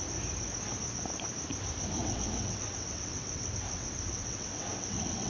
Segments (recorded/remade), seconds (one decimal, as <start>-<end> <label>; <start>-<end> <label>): 0.0-2.0 recorded; 2.0-5.3 remade